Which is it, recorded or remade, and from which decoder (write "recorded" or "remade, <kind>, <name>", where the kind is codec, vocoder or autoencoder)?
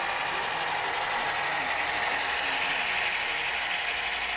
recorded